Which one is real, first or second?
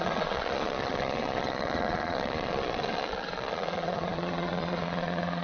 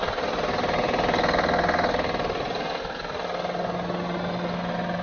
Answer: second